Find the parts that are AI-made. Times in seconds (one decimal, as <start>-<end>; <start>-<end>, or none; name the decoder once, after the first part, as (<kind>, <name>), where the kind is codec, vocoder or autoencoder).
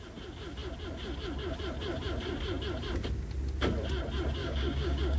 4.4-5.2 (codec, DAC)